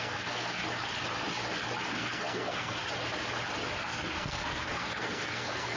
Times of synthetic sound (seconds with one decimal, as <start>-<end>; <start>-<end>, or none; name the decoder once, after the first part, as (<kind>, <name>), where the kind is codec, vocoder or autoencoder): 0.0-0.6 (codec, SNAC); 1.9-2.8; 3.8-5.8